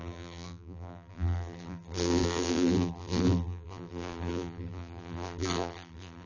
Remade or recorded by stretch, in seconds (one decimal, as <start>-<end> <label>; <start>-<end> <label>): 0.0-6.3 remade